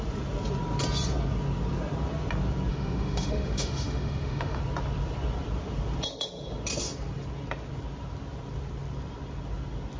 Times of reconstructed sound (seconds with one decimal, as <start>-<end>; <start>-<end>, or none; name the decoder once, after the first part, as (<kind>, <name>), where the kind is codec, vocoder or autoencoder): 2.7-4.6 (autoencoder, DAC-VAE)